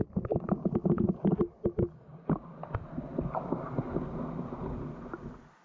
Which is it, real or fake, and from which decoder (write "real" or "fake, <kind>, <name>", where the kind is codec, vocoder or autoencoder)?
real